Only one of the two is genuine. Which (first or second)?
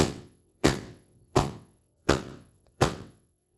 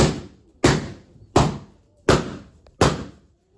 second